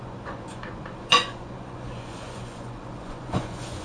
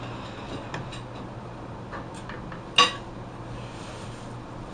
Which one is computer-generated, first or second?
first